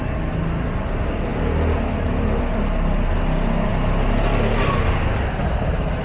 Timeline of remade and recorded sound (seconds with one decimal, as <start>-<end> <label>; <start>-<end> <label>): 0.0-6.0 recorded